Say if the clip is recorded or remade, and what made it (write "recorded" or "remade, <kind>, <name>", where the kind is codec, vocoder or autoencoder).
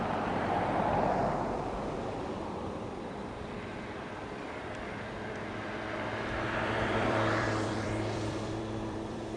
remade, vocoder, BigVGAN v2